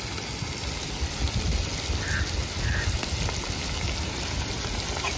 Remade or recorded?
recorded